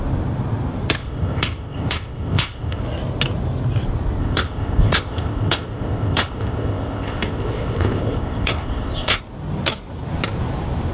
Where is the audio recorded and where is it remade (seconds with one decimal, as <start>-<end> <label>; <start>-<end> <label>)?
0.0-1.0 recorded; 1.0-2.8 remade; 2.8-4.2 recorded; 4.2-9.2 remade; 9.2-10.9 recorded

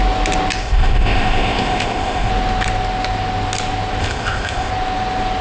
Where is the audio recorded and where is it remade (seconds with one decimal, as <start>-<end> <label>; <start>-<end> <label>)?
0.0-0.6 recorded; 0.6-2.3 remade; 2.3-4.0 recorded; 4.0-4.7 remade; 4.7-5.4 recorded

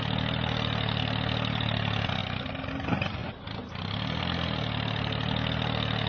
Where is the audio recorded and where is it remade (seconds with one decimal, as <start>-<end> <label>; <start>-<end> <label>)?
0.0-6.1 recorded

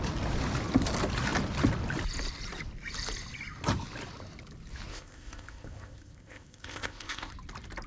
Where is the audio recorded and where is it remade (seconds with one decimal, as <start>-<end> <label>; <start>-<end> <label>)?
0.0-4.9 recorded; 4.9-7.3 remade; 7.3-7.9 recorded

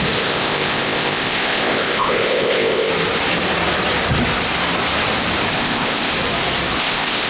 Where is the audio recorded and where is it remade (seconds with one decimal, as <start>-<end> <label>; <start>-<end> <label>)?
0.0-2.9 remade; 2.9-5.5 recorded; 5.5-6.1 remade; 6.1-6.8 recorded; 6.8-7.3 remade

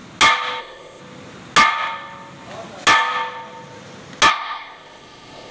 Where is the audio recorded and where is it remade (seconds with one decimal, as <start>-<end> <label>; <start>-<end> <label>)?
0.0-0.6 recorded; 0.6-1.0 remade; 1.0-4.3 recorded; 4.3-5.5 remade

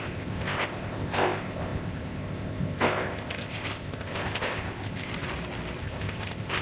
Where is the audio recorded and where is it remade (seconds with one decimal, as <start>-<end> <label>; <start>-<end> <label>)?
0.0-5.1 remade; 5.1-5.8 recorded; 5.8-6.6 remade

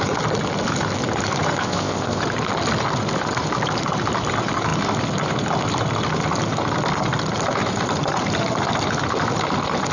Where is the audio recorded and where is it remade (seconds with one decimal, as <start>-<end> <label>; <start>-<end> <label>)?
0.0-1.6 recorded; 1.6-2.2 remade; 2.2-9.9 recorded